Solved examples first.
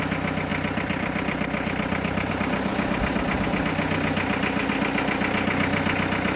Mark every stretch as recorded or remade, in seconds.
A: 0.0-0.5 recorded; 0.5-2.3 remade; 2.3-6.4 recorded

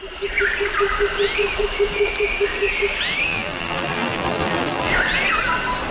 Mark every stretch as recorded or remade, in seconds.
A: 0.0-3.3 recorded; 3.3-4.9 remade; 4.9-5.9 recorded

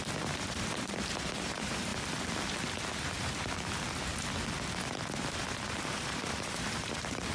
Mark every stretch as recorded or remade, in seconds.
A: 0.0-1.9 remade; 1.9-3.2 recorded; 3.2-4.1 remade; 4.1-5.4 recorded; 5.4-7.3 remade

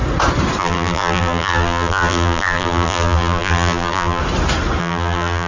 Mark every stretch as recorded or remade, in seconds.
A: 0.0-0.6 recorded; 0.6-4.2 remade; 4.2-4.8 recorded; 4.8-5.5 remade

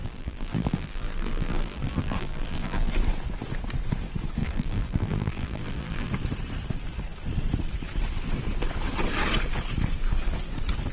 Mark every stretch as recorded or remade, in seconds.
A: 0.0-2.9 remade; 2.9-4.4 recorded; 4.4-6.1 remade; 6.1-10.9 recorded

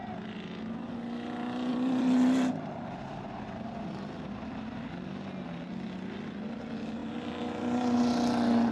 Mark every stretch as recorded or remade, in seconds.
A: 0.0-1.7 recorded; 1.7-4.9 remade; 4.9-8.7 recorded

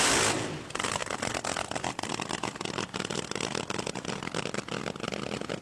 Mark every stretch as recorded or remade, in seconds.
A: 0.0-1.0 recorded; 1.0-4.4 remade; 4.4-5.6 recorded

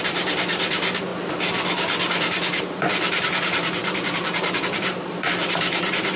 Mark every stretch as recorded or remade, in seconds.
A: 0.0-1.1 remade; 1.1-2.6 recorded; 2.6-6.2 remade